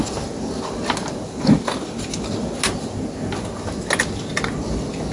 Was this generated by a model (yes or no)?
no